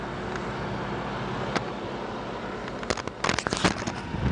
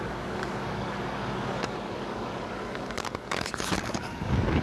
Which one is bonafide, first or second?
first